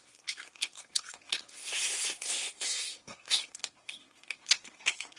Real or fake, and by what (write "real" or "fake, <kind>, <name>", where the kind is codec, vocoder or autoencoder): fake, codec, SNAC